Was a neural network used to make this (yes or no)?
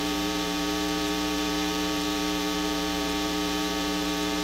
yes